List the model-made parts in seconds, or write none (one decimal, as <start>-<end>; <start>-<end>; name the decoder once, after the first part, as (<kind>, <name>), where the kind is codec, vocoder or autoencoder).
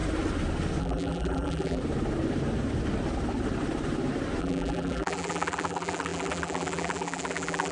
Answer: 0.8-1.8 (vocoder, BigVGAN v2); 4.4-7.7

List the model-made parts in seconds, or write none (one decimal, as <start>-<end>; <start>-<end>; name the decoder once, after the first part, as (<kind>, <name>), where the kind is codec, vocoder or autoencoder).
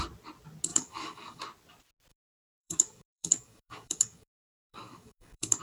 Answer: 0.7-1.4 (codec, DAC); 2.1-5.6